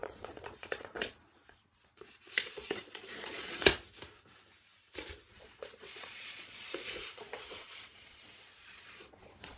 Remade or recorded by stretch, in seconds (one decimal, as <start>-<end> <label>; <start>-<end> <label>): 0.0-3.7 remade; 3.7-5.3 recorded; 5.3-9.6 remade